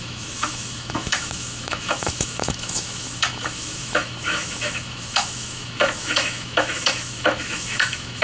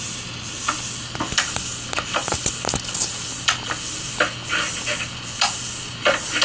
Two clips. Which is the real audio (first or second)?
second